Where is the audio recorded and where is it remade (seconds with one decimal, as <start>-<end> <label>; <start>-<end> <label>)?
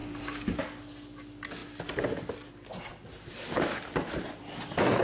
0.0-0.6 remade; 0.6-5.0 recorded